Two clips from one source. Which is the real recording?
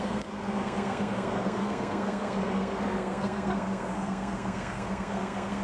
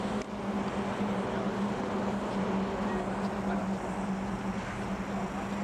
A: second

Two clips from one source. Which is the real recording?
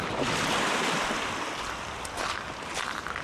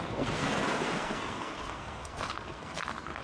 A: first